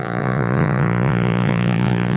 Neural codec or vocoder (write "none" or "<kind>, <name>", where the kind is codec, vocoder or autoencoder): vocoder, Vocos